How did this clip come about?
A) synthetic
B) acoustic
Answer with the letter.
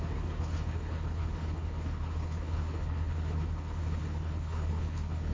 A